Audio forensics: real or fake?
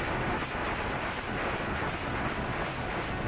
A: real